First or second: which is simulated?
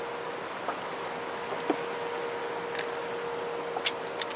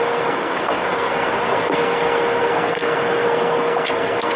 second